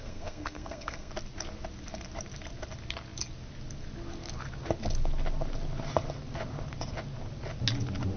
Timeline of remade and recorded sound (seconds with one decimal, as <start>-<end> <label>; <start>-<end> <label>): 0.0-1.1 remade; 1.1-8.2 recorded